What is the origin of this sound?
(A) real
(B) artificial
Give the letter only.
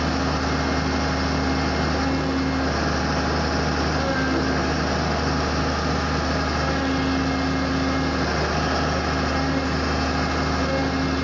A